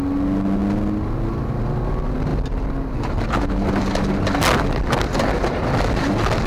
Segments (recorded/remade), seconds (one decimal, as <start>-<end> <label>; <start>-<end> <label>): 0.0-6.5 recorded